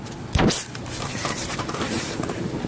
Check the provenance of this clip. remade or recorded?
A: remade